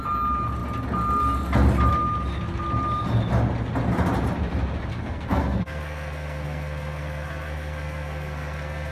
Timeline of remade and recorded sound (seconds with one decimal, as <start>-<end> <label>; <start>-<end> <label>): 0.0-4.9 recorded; 4.9-8.9 remade